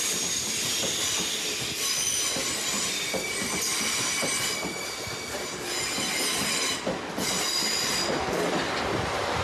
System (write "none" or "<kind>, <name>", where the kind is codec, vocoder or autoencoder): none